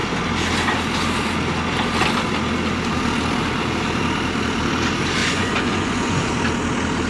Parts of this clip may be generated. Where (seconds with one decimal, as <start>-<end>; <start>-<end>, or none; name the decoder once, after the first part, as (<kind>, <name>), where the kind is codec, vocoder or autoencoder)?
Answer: 5.2-6.3 (vocoder, Vocos)